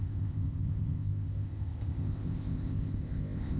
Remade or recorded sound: remade